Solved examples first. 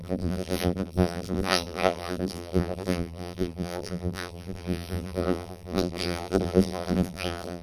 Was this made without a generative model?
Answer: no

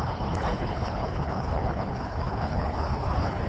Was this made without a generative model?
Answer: no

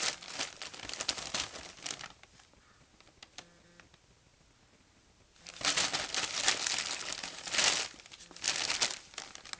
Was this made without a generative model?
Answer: yes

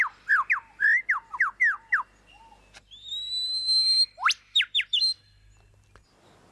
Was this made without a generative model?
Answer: yes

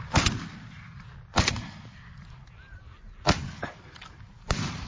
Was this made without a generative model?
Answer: yes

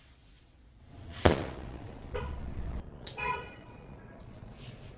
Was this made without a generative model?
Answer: no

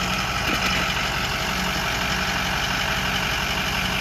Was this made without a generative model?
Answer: yes